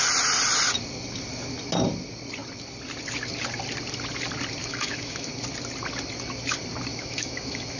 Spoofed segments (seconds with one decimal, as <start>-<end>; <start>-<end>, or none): 4.6-5.3; 6.9-7.8